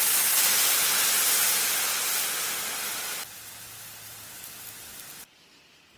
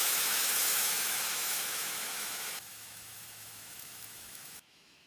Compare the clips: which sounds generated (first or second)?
second